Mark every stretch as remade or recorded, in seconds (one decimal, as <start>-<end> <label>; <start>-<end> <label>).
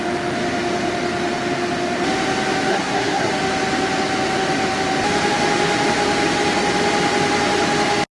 0.0-2.7 recorded; 2.7-3.3 remade; 3.3-8.1 recorded